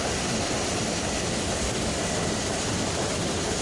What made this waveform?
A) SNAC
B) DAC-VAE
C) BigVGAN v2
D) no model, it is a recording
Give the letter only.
D